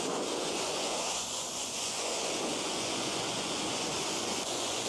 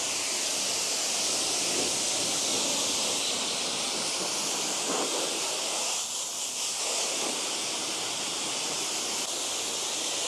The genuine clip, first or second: second